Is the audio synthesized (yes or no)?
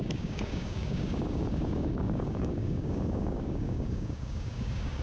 yes